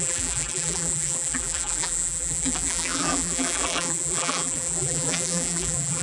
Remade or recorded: remade